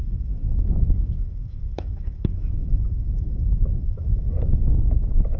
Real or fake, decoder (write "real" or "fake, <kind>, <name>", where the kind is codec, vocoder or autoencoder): fake, autoencoder, DAC-VAE